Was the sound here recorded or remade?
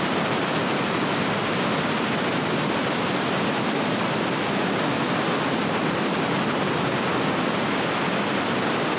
recorded